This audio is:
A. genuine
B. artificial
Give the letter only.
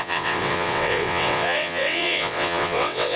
B